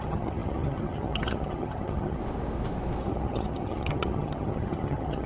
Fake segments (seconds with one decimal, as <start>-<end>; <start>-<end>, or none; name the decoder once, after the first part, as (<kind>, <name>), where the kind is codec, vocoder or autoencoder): 0.0-2.2 (vocoder, HiFi-GAN); 3.0-5.3